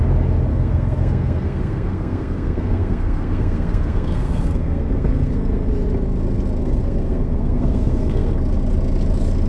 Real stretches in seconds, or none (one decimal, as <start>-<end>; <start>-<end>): 0.0-0.5; 5.7-6.6; 8.3-9.5